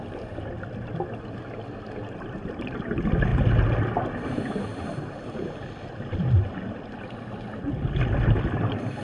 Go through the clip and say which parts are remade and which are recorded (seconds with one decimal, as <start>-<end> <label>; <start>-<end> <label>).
0.0-9.0 recorded